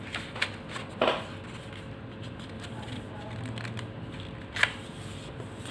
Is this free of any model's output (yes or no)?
yes